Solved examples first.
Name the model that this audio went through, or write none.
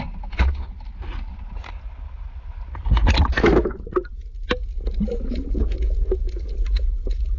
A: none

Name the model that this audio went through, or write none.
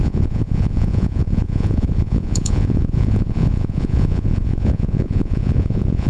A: vocoder, Vocos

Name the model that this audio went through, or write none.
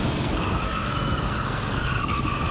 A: codec, SNAC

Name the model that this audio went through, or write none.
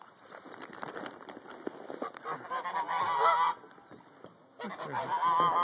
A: none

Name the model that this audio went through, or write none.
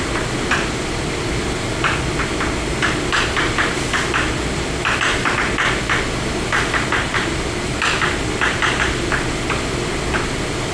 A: none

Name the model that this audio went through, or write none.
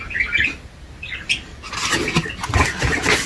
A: none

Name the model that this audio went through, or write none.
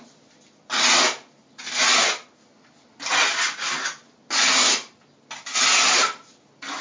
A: none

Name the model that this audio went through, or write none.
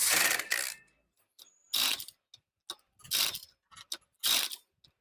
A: none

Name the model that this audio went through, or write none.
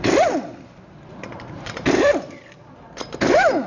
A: vocoder, BigVGAN v2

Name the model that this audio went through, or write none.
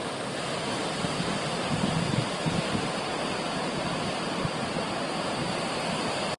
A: vocoder, BigVGAN v2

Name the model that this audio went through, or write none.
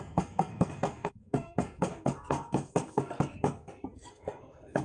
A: codec, SNAC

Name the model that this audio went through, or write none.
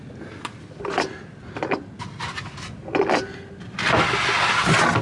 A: none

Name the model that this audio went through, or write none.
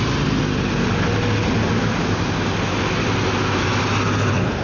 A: none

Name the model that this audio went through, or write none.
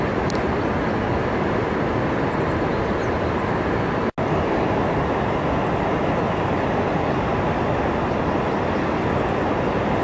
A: none